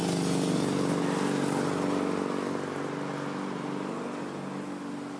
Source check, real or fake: real